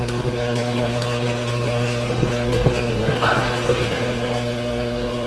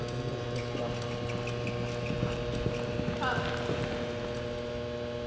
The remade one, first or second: first